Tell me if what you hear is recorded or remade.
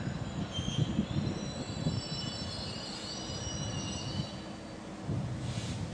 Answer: recorded